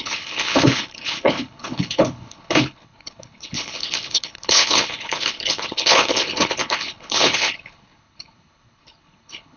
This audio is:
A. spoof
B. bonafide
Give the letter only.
A